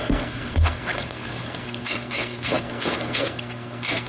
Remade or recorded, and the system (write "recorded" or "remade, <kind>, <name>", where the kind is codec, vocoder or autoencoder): remade, codec, SNAC